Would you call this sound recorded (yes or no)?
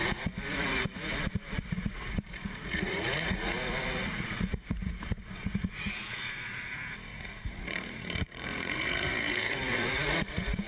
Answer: no